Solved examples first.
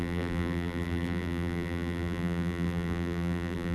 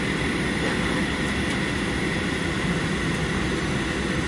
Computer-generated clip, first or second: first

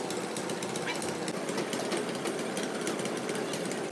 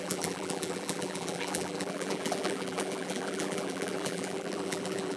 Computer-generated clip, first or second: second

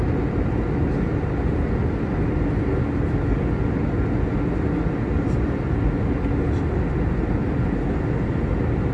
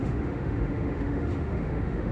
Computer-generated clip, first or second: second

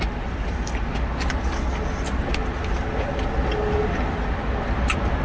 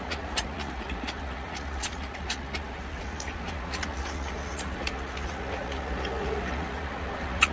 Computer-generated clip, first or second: second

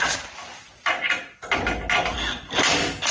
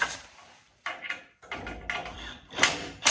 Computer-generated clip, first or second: second